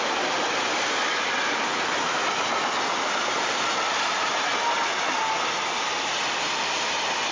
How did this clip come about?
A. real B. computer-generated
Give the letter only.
A